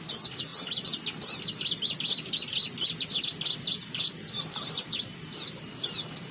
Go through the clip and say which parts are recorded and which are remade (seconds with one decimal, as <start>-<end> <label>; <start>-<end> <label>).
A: 0.0-6.3 recorded